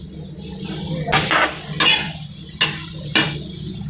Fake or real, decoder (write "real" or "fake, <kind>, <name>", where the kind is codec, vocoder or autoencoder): real